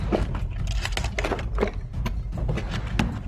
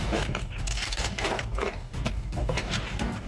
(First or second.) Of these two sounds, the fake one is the second